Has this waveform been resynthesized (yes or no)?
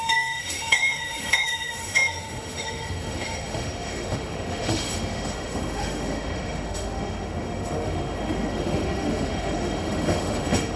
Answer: yes